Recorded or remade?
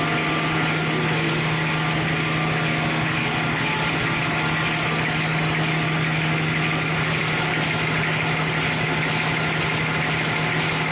recorded